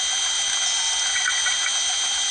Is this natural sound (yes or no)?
yes